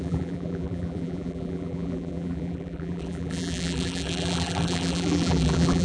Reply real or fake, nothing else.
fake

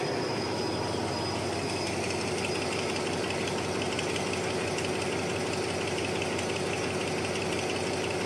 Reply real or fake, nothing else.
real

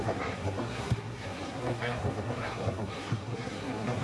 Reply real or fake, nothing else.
fake